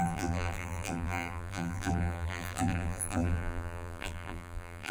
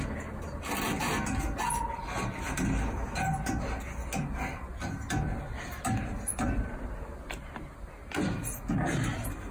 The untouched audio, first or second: second